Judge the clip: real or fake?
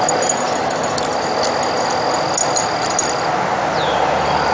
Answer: real